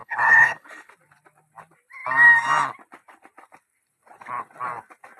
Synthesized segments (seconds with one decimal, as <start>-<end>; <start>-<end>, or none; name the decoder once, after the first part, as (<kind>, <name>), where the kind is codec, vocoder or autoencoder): 0.0-0.9 (codec, HILCodec)